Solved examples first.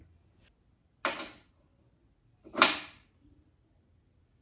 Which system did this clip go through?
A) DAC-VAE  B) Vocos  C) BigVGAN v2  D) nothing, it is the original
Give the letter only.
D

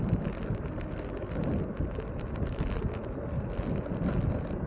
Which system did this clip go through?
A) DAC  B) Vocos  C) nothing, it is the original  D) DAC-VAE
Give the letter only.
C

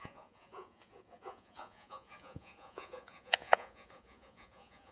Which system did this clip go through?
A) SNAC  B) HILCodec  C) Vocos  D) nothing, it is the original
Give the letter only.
C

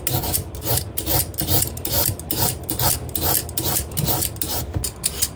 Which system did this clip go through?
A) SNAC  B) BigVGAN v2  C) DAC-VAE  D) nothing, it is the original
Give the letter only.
D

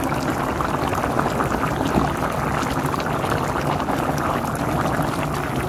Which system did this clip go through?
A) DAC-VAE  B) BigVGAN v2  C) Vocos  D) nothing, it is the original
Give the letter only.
D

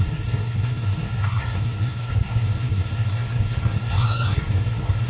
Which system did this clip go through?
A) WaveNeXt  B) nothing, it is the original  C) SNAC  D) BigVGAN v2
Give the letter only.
C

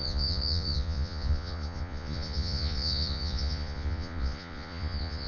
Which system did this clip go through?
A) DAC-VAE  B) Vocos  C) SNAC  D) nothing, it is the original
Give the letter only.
B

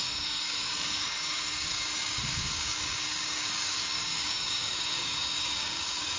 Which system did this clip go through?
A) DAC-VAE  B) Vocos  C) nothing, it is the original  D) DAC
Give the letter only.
D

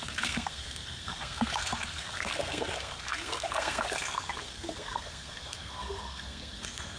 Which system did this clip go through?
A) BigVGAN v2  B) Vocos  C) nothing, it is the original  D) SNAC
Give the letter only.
D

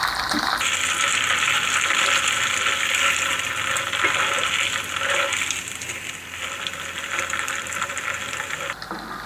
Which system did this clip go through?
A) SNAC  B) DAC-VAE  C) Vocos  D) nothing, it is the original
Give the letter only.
D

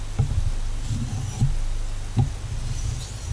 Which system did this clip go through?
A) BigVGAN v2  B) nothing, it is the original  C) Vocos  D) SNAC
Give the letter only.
B